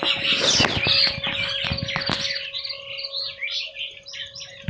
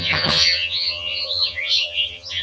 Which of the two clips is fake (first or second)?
second